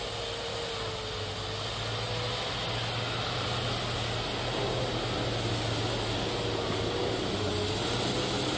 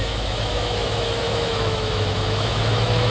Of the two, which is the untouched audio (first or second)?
first